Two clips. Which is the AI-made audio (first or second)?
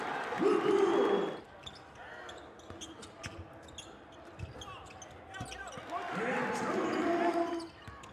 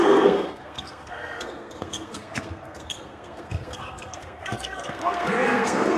second